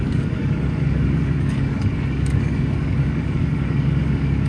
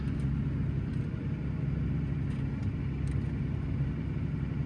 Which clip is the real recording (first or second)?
second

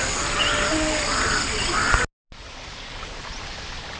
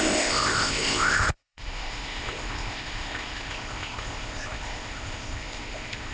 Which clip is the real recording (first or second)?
first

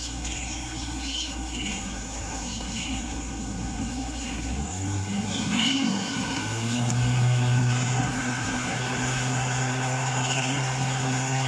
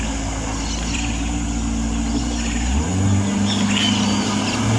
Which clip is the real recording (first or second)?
second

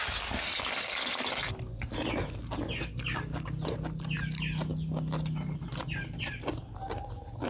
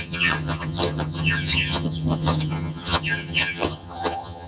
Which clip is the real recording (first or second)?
first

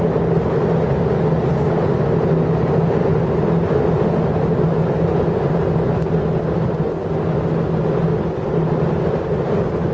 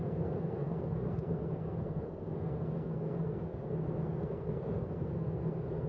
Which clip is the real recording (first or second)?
first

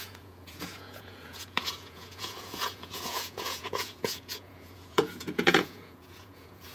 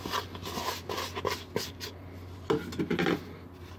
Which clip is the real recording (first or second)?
second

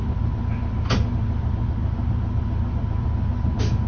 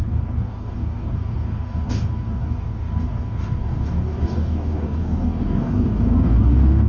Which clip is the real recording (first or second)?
first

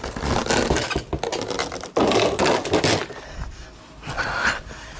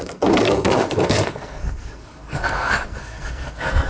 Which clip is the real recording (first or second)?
first